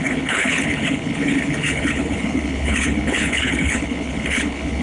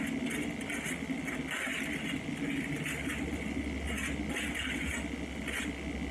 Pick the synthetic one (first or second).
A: first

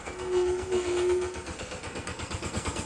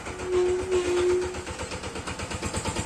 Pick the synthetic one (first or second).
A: first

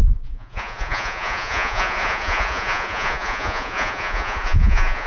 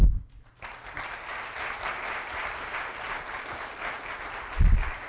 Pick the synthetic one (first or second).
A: first